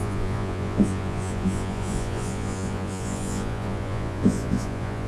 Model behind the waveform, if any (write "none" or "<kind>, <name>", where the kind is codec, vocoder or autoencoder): vocoder, Vocos